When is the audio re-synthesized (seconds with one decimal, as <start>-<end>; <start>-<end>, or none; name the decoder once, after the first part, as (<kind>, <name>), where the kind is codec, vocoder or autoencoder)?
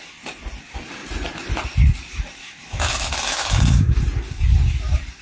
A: 2.4-4.0 (autoencoder, DAC-VAE)